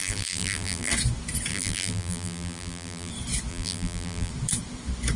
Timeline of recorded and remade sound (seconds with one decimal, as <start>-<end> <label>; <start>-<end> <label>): 0.0-0.9 remade; 0.9-1.5 recorded; 1.5-3.1 remade; 3.1-3.5 recorded; 3.5-4.3 remade; 4.3-5.2 recorded